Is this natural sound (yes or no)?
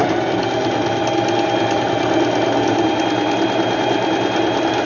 yes